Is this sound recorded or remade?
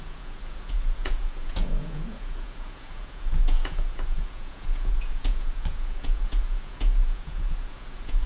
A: remade